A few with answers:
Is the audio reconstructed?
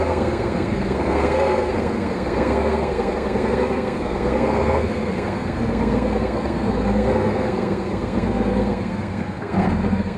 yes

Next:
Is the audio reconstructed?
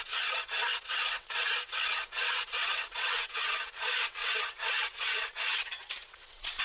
yes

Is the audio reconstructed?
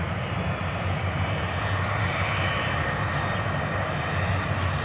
no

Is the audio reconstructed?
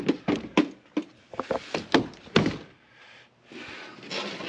no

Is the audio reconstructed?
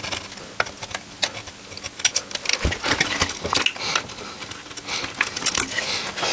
no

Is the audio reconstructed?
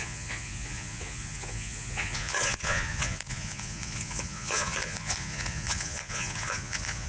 yes